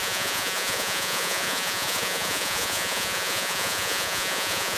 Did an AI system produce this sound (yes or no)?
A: yes